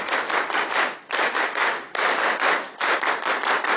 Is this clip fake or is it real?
real